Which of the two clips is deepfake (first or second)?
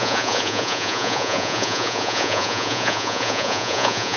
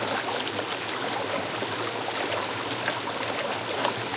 first